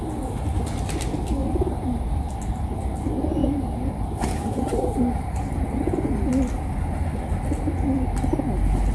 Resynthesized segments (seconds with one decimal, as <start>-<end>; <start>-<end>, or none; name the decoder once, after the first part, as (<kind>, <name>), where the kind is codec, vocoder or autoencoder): 1.4-2.2 (vocoder, BigVGAN v2); 3.4-5.6